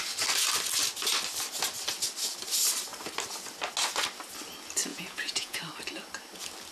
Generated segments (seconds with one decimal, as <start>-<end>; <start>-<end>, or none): 4.9-5.6